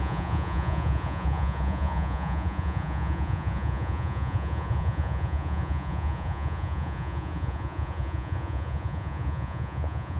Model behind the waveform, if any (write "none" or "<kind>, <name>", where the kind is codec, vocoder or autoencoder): vocoder, Vocos